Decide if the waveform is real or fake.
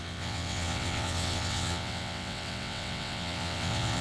fake